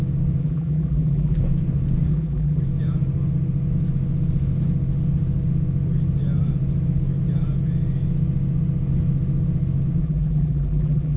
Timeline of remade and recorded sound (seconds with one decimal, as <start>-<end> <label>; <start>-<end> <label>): 0.0-0.4 recorded; 0.4-1.4 remade; 1.4-2.1 recorded; 2.1-2.6 remade; 2.6-10.0 recorded; 10.0-11.2 remade